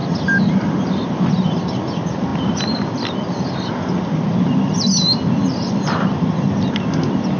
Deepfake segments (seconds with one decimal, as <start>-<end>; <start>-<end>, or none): none

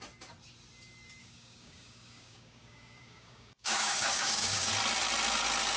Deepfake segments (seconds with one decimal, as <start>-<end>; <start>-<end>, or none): 1.2-4.7